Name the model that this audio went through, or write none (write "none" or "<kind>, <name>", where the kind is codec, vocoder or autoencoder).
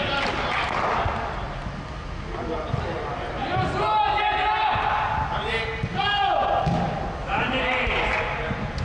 none